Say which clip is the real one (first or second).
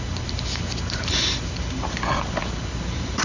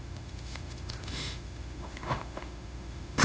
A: first